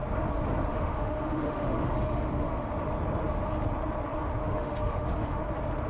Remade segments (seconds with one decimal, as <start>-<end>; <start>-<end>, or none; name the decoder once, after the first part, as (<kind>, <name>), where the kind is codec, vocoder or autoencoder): 0.7-2.7 (autoencoder, DAC-VAE); 4.4-5.4

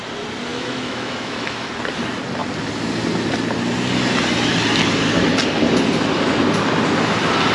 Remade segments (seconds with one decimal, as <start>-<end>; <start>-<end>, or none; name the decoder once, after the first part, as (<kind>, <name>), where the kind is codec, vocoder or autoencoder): 0.5-1.7 (autoencoder, DAC-VAE)

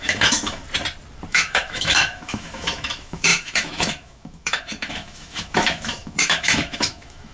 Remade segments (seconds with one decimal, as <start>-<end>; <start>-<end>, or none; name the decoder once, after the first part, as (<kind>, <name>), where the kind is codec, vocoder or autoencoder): 0.0-0.6 (autoencoder, DAC-VAE); 1.3-7.3

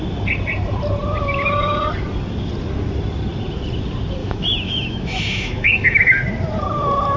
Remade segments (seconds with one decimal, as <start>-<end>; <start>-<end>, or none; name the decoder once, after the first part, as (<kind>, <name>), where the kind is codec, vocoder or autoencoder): 4.2-6.2 (autoencoder, DAC-VAE)

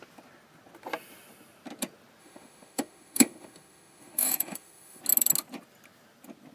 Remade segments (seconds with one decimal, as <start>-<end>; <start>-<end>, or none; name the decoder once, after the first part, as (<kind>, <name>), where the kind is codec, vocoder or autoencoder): 2.2-5.0 (autoencoder, DAC-VAE)

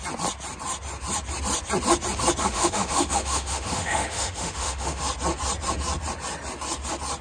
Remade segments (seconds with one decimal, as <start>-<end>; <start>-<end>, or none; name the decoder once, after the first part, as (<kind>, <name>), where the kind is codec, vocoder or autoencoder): 2.4-5.0 (autoencoder, DAC-VAE)